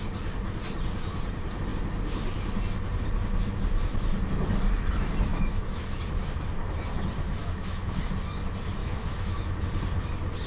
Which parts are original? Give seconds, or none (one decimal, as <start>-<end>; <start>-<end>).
0.0-5.3; 6.0-7.4; 8.0-8.8; 9.6-10.5